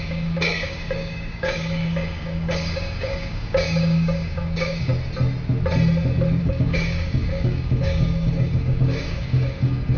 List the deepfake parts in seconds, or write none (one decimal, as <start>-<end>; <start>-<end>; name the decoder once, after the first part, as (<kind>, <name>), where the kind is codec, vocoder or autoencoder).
0.0-4.9 (codec, DAC); 6.4-10.0